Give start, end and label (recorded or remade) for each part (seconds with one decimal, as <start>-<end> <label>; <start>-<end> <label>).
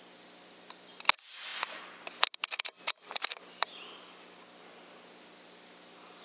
0.0-6.2 recorded